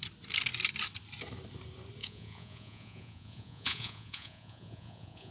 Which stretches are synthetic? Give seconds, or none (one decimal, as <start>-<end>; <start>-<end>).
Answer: 2.0-5.3